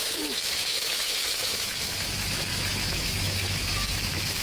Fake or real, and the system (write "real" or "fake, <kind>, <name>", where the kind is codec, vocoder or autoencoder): fake, autoencoder, DAC-VAE